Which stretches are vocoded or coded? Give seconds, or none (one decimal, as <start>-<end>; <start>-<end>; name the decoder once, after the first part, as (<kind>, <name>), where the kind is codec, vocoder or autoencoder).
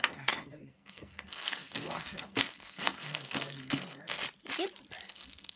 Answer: 0.0-4.2 (codec, SNAC); 5.1-5.6